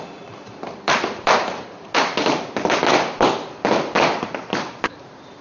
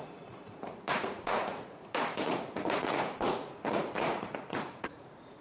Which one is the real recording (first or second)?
first